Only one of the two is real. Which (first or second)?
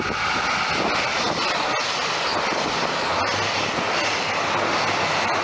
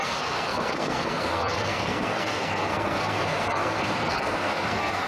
first